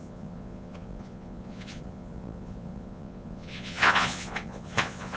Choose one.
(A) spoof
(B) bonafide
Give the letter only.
A